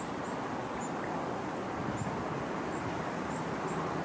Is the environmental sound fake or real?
real